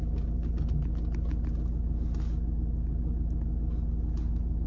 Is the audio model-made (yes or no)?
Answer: no